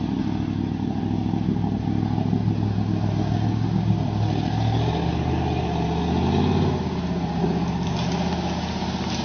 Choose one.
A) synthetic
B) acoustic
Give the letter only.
B